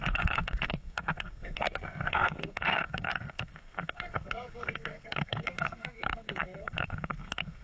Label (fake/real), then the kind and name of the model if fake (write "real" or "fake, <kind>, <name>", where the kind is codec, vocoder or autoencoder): fake, codec, SNAC